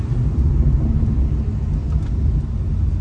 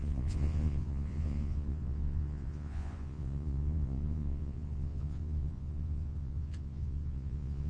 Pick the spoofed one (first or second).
second